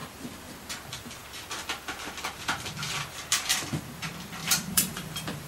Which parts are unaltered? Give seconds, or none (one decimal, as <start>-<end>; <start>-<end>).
0.0-4.4